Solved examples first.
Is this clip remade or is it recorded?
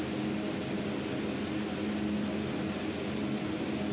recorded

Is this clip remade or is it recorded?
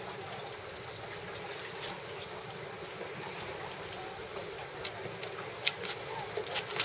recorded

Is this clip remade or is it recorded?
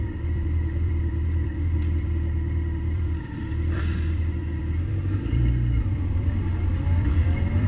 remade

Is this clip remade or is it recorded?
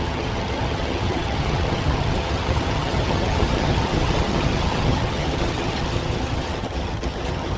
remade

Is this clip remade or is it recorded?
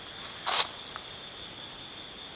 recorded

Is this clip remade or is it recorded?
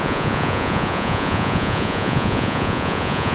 remade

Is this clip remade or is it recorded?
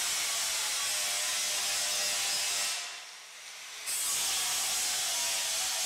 recorded